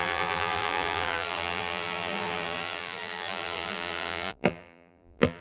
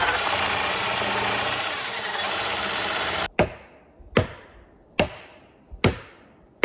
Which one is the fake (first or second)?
first